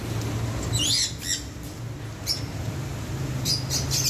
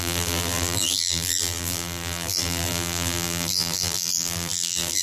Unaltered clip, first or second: first